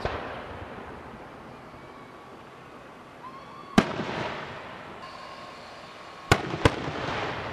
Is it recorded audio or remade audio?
remade